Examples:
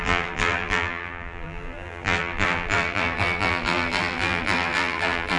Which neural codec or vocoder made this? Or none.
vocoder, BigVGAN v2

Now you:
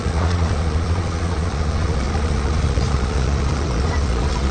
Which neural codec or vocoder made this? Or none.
vocoder, Vocos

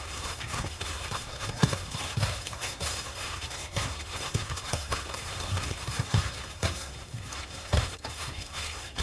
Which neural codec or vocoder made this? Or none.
codec, SNAC